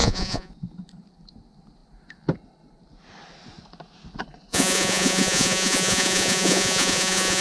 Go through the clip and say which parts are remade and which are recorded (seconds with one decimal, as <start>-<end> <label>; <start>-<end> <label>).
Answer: 0.0-0.5 remade; 0.5-4.5 recorded; 4.5-7.4 remade